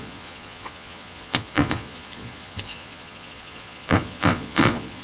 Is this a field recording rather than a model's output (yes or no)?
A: no